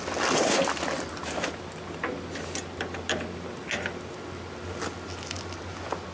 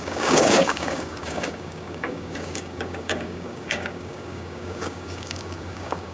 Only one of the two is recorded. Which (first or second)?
first